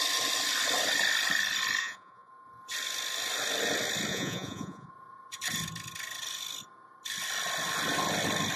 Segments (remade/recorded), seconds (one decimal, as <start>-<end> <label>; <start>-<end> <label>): 0.0-1.8 recorded; 1.8-2.3 remade; 2.3-4.1 recorded; 4.1-4.9 remade; 4.9-8.6 recorded